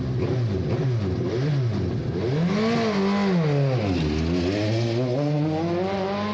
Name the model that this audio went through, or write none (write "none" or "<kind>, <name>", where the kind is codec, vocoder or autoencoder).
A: none